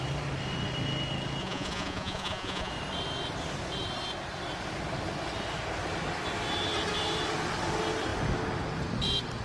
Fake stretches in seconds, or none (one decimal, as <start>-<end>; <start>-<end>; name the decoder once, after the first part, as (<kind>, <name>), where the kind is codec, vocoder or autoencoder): 1.4-2.7 (vocoder, Vocos)